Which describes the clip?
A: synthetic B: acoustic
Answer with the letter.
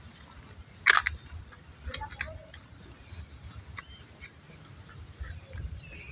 B